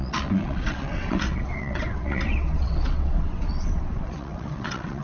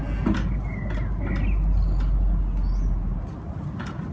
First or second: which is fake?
first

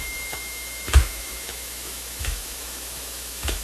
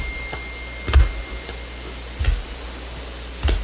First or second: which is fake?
first